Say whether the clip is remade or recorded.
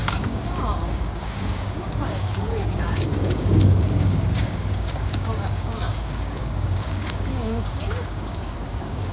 remade